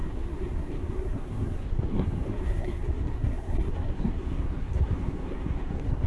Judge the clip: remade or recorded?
remade